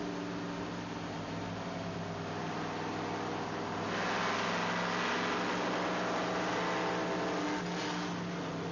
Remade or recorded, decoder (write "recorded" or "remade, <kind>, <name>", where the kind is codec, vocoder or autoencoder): recorded